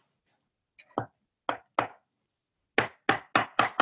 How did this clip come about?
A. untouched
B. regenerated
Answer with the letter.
A